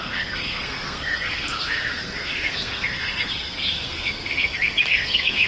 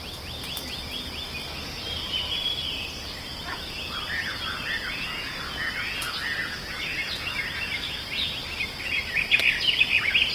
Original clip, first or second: second